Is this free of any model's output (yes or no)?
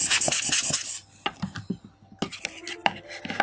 yes